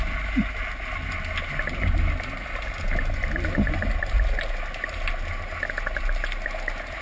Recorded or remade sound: recorded